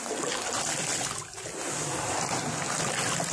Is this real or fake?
real